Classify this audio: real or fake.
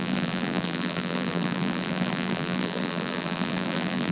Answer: fake